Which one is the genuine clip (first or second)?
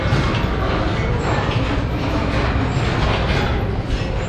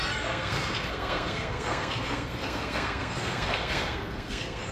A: first